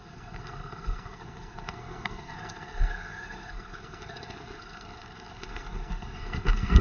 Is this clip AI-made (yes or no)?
yes